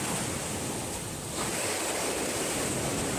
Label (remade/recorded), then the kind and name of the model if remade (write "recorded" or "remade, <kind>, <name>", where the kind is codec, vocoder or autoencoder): recorded